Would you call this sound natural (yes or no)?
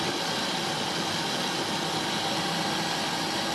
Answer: yes